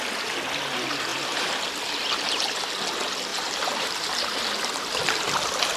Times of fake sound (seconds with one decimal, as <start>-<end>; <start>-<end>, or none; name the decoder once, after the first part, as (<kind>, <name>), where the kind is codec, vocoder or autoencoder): 1.1-1.7 (vocoder, BigVGAN v2); 3.3-4.4